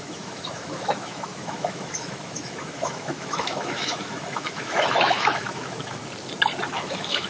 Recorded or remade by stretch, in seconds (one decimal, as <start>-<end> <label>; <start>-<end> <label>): 0.0-6.0 remade; 6.0-6.7 recorded; 6.7-7.3 remade